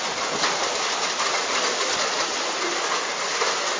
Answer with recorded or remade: recorded